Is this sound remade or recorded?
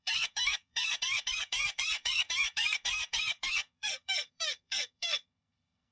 remade